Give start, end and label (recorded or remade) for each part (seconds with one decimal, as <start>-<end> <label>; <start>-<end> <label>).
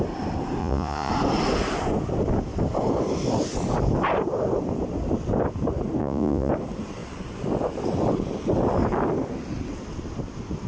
0.0-0.6 recorded; 0.6-1.1 remade; 1.1-6.0 recorded; 6.0-6.5 remade; 6.5-10.7 recorded